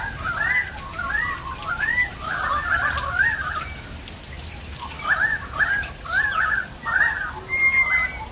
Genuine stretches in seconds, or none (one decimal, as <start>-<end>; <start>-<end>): 0.0-8.3